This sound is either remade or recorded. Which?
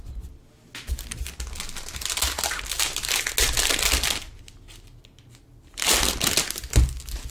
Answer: recorded